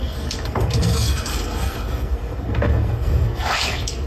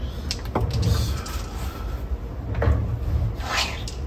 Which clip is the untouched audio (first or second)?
second